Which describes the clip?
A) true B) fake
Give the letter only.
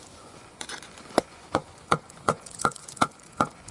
B